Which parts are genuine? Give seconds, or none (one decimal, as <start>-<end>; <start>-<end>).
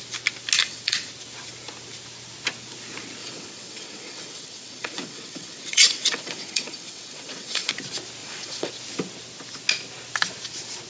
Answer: 0.0-0.6; 1.1-3.2; 7.7-8.2; 8.7-10.9